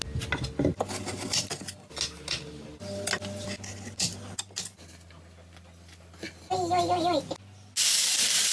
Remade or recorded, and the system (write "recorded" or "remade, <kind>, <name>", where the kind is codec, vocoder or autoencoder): recorded